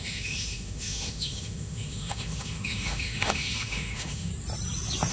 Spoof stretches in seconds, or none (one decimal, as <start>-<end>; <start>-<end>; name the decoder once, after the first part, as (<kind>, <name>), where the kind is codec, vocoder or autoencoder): 0.0-4.3 (autoencoder, DAC-VAE)